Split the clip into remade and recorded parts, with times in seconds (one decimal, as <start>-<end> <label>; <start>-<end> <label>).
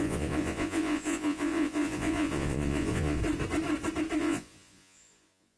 0.0-3.2 remade; 3.2-4.2 recorded; 4.2-5.6 remade